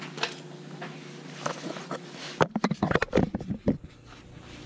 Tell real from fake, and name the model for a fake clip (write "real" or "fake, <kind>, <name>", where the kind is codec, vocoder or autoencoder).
real